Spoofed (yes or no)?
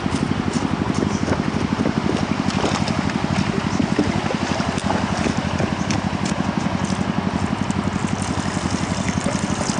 no